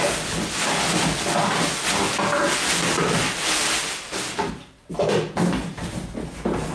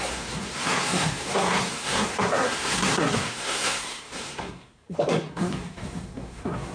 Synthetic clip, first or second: second